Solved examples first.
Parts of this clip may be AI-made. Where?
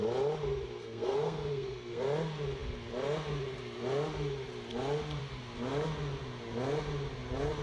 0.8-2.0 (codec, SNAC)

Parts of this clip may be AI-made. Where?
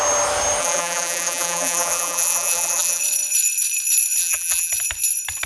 0.6-3.0 (vocoder, BigVGAN v2); 4.2-4.7